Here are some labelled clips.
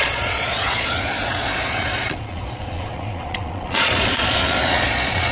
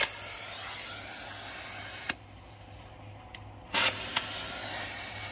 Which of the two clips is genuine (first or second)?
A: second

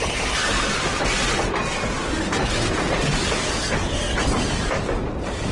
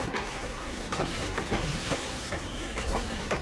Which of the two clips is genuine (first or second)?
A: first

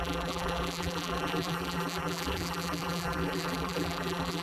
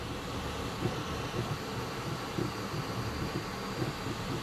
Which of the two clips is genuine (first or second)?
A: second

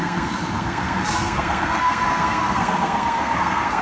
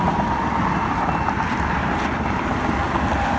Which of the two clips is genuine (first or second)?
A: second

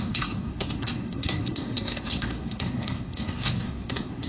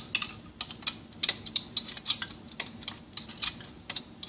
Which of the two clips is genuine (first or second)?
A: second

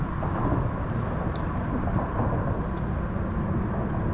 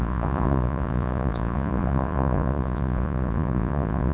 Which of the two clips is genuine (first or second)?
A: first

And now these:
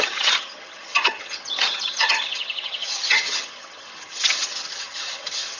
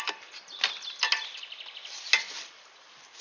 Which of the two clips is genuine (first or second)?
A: second